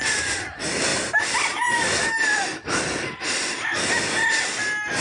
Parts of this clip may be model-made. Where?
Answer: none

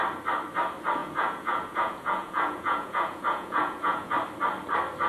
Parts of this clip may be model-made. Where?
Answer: 1.0-4.1

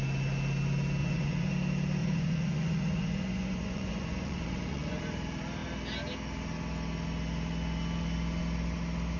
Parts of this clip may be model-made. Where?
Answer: 1.0-1.5; 2.0-5.0